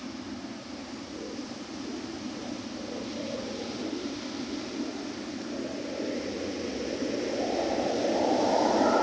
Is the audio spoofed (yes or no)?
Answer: no